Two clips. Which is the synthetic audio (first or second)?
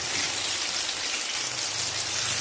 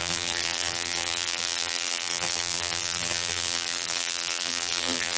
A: second